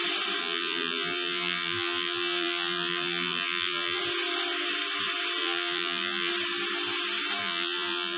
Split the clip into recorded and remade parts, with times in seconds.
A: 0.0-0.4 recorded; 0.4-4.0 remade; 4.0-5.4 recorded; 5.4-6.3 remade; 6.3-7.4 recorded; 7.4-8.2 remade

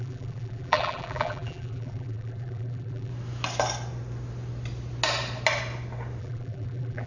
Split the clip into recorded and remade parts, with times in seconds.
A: 0.0-3.1 remade; 3.1-6.2 recorded; 6.2-7.1 remade